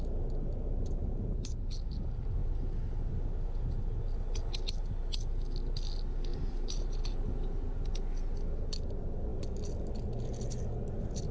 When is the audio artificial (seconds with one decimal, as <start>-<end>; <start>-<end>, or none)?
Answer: 0.7-1.5; 6.3-7.2